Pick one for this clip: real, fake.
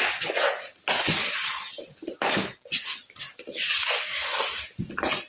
real